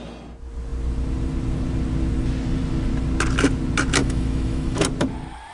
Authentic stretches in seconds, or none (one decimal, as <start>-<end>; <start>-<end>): 0.0-4.0; 4.8-5.5